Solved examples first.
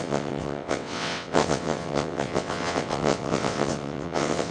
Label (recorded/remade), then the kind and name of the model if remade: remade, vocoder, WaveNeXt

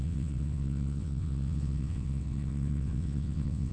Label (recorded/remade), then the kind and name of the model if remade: remade, vocoder, WaveNeXt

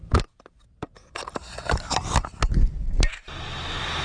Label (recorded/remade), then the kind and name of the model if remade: recorded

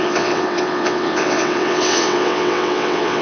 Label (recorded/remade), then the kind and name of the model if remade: remade, vocoder, WaveNeXt